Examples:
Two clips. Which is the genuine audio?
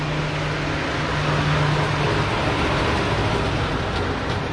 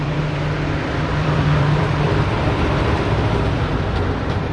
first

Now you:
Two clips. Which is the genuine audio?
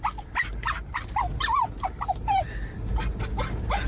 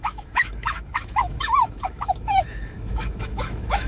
first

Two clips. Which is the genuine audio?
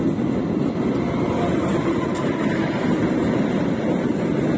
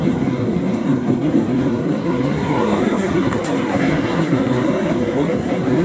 first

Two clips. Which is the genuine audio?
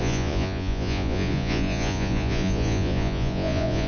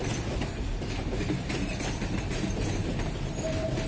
second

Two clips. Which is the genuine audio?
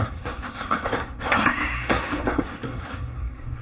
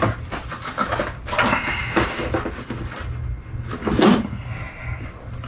second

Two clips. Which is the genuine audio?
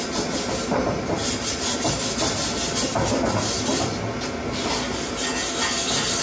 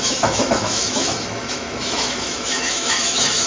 first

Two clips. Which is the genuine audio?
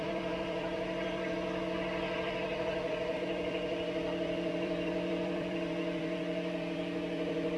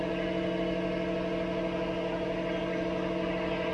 second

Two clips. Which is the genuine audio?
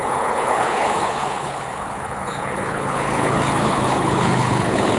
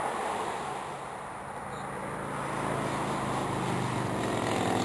second